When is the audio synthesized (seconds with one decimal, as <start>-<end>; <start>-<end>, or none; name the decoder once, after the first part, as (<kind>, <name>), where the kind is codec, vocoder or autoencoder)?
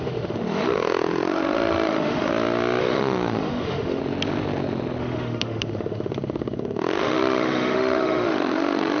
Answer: 0.0-2.3 (autoencoder, DAC-VAE); 2.8-4.0; 5.0-9.0